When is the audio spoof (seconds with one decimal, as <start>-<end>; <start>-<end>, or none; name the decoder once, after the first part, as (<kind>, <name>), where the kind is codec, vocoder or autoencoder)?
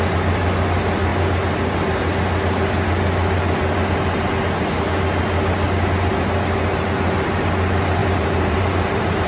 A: 8.0-9.3 (vocoder, BigVGAN v2)